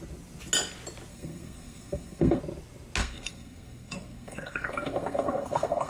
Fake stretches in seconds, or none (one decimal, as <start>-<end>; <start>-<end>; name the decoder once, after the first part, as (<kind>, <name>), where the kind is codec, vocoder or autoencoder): 1.1-2.4 (codec, SNAC); 3.0-5.9